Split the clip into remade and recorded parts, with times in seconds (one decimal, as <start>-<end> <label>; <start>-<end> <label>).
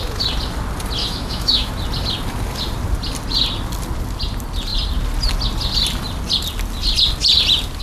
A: 0.0-1.0 recorded; 1.0-1.7 remade; 1.7-7.8 recorded